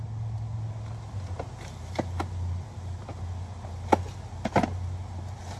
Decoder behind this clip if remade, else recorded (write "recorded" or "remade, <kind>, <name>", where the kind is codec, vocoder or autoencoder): recorded